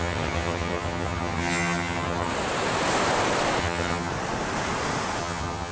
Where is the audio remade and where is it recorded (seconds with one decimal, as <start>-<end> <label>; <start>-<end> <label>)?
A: 0.0-2.3 remade; 2.3-3.6 recorded; 3.6-4.1 remade; 4.1-5.2 recorded; 5.2-5.7 remade